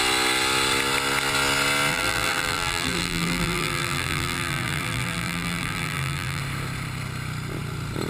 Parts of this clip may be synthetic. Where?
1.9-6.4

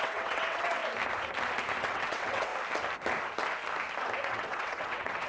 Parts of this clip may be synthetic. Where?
0.0-0.8; 1.8-2.5; 4.3-5.3

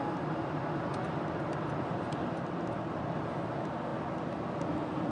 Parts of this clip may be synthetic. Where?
none

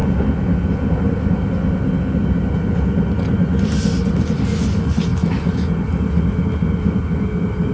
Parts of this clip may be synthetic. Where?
none

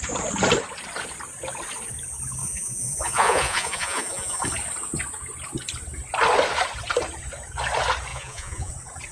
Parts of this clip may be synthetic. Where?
2.4-4.4; 8.1-8.7

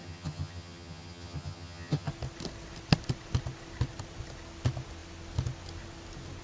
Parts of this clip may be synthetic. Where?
0.0-2.1

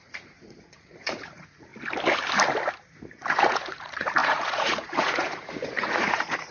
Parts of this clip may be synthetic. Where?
0.0-1.7; 3.3-6.5

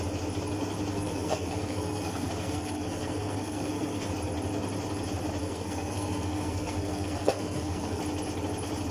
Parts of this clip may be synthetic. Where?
0.9-4.1; 5.4-8.0